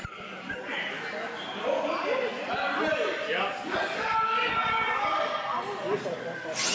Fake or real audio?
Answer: real